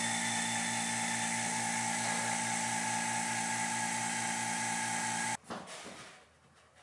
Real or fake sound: real